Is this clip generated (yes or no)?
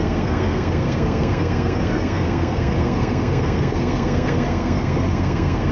yes